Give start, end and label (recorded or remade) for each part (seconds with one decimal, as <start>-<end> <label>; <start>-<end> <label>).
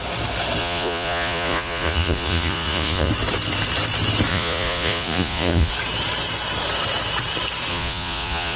0.0-0.6 recorded; 0.6-3.1 remade; 3.1-4.3 recorded; 4.3-5.7 remade; 5.7-7.7 recorded; 7.7-8.6 remade